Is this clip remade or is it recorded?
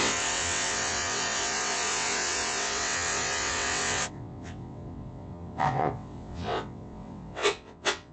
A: remade